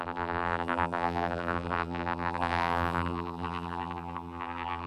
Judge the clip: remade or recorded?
remade